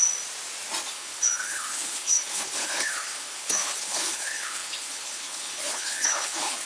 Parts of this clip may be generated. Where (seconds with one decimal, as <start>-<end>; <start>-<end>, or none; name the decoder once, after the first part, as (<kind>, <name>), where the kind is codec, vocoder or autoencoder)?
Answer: 0.9-6.7 (codec, HILCodec)